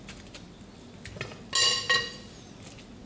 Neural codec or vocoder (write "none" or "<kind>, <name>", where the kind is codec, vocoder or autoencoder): none